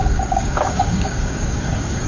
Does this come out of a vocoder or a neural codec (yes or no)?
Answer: yes